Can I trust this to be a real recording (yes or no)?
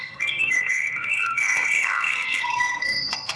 no